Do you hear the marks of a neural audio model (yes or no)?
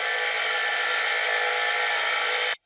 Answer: no